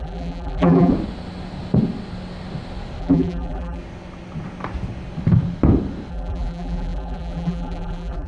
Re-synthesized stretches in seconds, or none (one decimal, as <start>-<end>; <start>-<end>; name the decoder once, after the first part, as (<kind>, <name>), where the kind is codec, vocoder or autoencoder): 0.0-0.9 (vocoder, BigVGAN v2); 3.0-3.8; 6.1-8.3